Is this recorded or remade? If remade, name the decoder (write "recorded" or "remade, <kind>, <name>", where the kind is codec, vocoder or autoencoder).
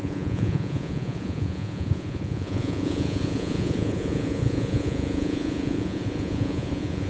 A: remade, vocoder, Vocos